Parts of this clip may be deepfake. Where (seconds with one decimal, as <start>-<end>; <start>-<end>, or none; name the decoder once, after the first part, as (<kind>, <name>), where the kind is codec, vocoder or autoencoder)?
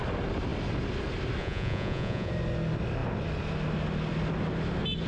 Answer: 1.4-2.3 (vocoder, Vocos)